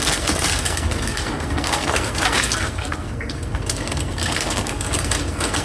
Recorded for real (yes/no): no